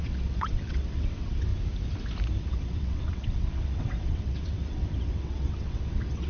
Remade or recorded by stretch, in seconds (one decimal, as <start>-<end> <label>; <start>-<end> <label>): 0.0-1.5 remade; 1.5-2.4 recorded; 2.4-6.3 remade